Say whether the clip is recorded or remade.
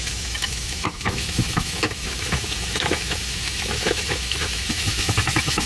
remade